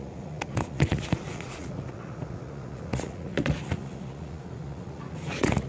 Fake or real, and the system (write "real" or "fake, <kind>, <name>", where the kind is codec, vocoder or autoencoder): fake, vocoder, Vocos